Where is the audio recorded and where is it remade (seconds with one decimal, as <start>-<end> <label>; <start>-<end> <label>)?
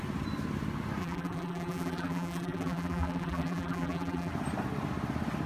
0.0-1.0 recorded; 1.0-4.3 remade; 4.3-5.5 recorded